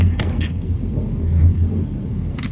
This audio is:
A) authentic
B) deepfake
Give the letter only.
B